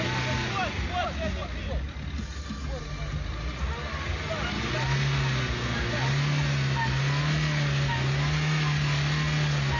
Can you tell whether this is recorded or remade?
recorded